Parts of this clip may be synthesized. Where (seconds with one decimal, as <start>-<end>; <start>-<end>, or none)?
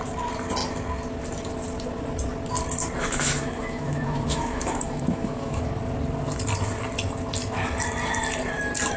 3.0-5.7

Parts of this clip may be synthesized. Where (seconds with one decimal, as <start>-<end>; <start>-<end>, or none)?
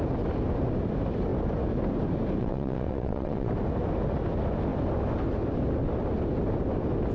2.4-3.5